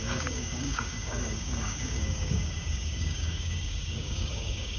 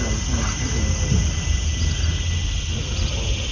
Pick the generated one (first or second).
first